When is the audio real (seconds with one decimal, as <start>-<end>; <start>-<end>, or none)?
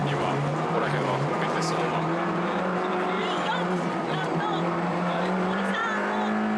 5.8-6.6